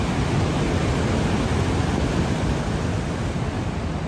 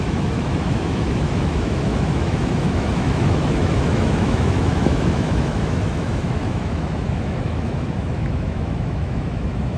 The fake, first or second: second